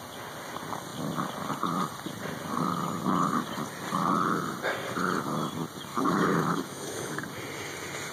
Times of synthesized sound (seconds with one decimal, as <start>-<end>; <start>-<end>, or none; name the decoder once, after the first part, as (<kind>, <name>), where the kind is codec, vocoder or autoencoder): 5.9-7.2 (autoencoder, DAC-VAE)